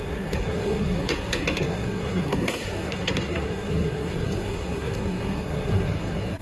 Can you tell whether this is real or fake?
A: fake